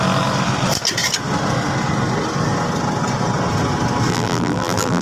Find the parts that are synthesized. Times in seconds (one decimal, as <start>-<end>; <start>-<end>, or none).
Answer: 4.1-5.0